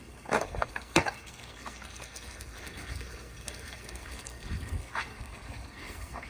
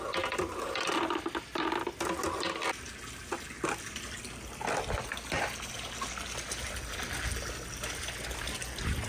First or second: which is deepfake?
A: first